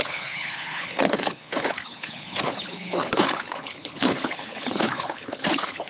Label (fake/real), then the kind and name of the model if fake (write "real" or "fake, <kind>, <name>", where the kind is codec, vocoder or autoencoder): fake, codec, HILCodec